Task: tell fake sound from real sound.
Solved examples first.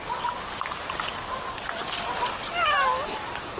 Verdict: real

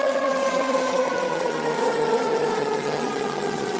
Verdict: fake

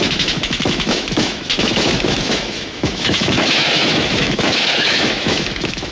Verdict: fake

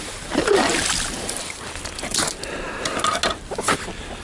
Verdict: real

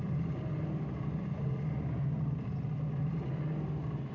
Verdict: real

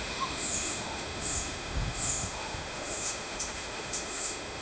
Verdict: fake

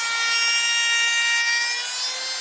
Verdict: real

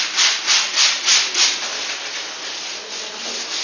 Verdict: real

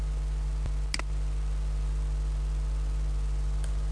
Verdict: real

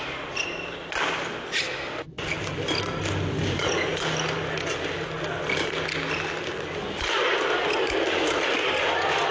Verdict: real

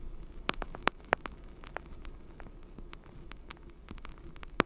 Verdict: fake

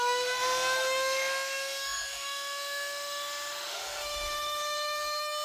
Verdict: fake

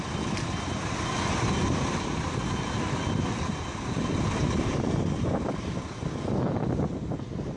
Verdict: real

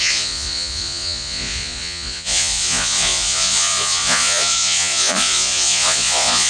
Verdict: fake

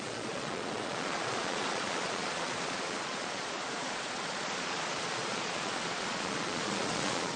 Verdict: fake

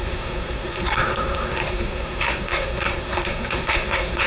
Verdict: fake